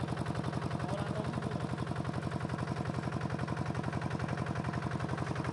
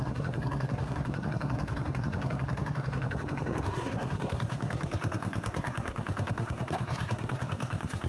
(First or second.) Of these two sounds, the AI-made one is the second